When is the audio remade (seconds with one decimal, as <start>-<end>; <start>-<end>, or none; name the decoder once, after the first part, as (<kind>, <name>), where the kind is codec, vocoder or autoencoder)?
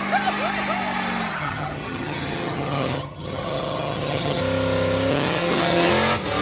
1.4-4.4 (vocoder, HiFi-GAN); 5.1-5.9